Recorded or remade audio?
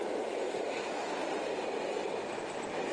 recorded